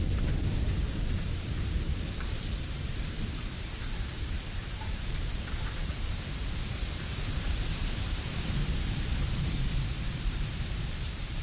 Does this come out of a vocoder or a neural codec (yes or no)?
yes